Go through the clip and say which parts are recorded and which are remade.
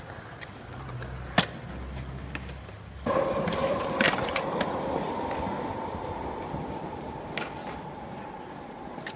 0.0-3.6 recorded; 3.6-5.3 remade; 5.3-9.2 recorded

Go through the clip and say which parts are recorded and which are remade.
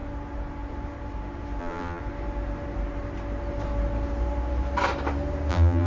0.0-1.6 recorded; 1.6-2.0 remade; 2.0-5.5 recorded; 5.5-5.9 remade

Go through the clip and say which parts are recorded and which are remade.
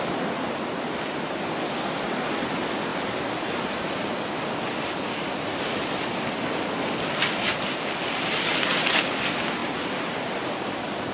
0.0-11.1 recorded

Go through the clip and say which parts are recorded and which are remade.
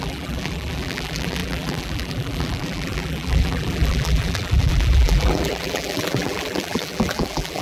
0.0-7.6 remade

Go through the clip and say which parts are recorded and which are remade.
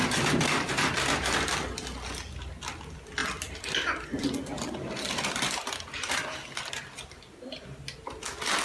0.0-0.7 remade; 0.7-3.2 recorded; 3.2-6.7 remade; 6.7-8.6 recorded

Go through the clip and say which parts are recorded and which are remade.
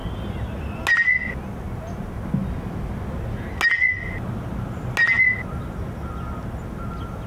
0.0-7.3 recorded